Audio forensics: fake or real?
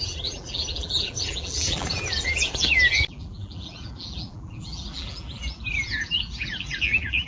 fake